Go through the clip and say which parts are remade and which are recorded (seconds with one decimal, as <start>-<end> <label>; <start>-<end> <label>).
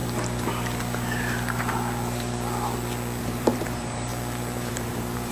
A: 0.0-3.2 recorded; 3.2-4.1 remade; 4.1-4.7 recorded; 4.7-5.3 remade